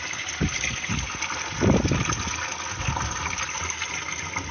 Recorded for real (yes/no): yes